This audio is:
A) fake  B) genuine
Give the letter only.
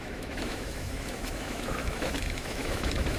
A